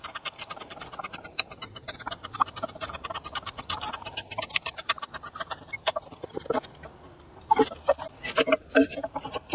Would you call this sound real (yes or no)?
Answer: no